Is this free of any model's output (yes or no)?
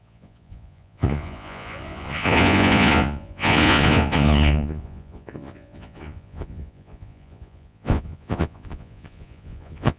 no